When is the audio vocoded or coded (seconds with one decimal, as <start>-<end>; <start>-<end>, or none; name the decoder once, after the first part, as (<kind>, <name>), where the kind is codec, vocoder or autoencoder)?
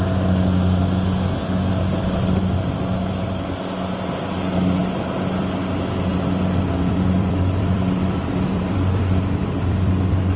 6.1-9.9 (vocoder, BigVGAN v2)